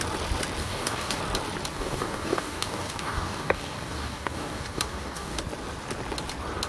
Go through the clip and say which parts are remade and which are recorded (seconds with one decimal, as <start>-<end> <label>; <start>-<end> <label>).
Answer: 0.0-0.6 recorded; 0.6-1.2 remade; 1.2-1.7 recorded; 1.7-5.4 remade; 5.4-6.7 recorded